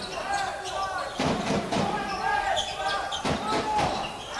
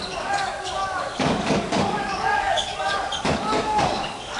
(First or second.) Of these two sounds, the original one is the first